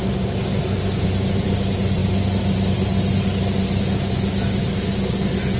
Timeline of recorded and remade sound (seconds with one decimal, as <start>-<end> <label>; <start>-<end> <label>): 0.0-5.6 recorded